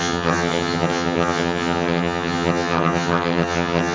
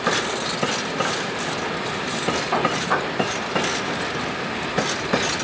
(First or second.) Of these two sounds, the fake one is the first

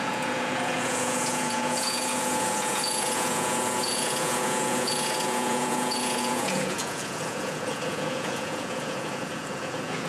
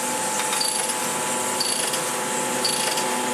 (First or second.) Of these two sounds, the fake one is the first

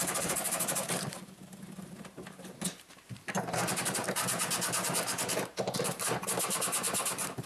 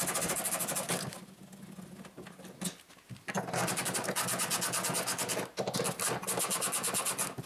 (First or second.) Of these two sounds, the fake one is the first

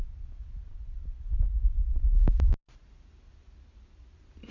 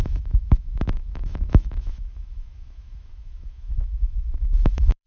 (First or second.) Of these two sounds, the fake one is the second